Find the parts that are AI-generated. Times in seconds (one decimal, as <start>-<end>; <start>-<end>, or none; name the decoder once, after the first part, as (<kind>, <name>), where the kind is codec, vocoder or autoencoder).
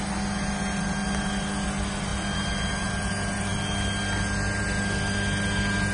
none